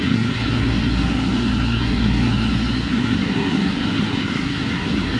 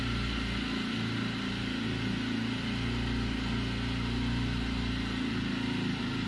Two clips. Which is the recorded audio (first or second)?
second